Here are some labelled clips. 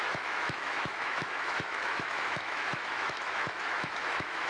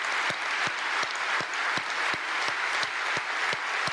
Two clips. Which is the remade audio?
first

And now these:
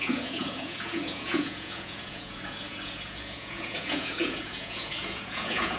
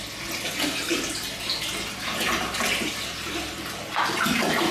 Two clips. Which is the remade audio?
first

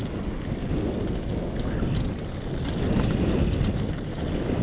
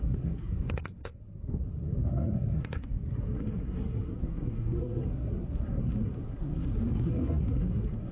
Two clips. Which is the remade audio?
second